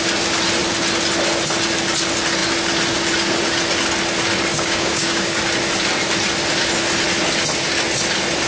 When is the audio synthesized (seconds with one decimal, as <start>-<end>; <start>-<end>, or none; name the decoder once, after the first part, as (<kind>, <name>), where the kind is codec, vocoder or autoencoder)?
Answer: 4.5-5.4 (codec, DAC)